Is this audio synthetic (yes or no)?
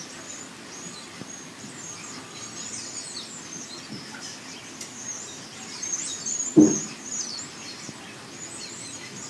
no